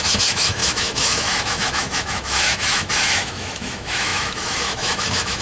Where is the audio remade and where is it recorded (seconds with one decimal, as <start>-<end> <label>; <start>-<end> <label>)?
0.0-5.4 remade